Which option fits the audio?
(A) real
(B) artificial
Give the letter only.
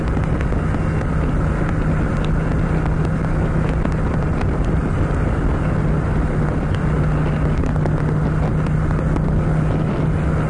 A